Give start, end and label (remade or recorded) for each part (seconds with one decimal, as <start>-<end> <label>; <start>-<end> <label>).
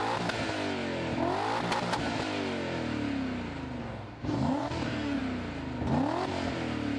0.0-3.8 recorded; 3.8-5.2 remade; 5.2-7.0 recorded